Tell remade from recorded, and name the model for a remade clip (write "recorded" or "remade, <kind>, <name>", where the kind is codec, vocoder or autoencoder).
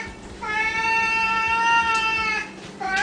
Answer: recorded